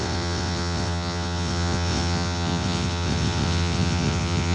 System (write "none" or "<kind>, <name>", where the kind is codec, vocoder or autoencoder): vocoder, WaveNeXt